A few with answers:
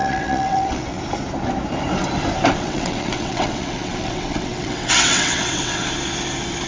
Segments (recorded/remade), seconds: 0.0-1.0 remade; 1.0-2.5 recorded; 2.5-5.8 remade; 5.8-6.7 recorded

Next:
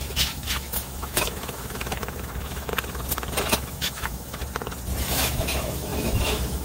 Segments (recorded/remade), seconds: 0.0-2.7 remade; 2.7-3.4 recorded; 3.4-4.4 remade; 4.4-5.1 recorded; 5.1-6.6 remade

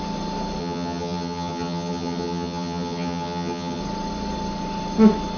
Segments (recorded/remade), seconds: 0.0-0.6 recorded; 0.6-3.8 remade; 3.8-5.4 recorded

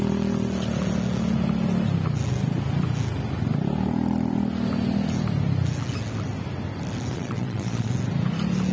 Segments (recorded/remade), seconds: 0.0-7.1 recorded; 7.1-7.9 remade; 7.9-8.7 recorded

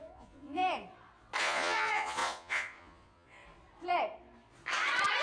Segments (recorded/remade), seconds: 0.0-0.6 remade; 0.6-1.4 recorded; 1.4-3.4 remade; 3.4-5.2 recorded

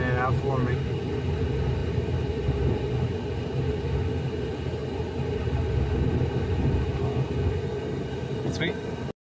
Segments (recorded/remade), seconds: 0.0-9.2 recorded

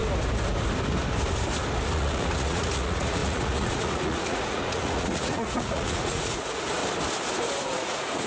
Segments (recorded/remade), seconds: 0.0-1.9 recorded; 1.9-6.8 remade; 6.8-7.6 recorded; 7.6-8.3 remade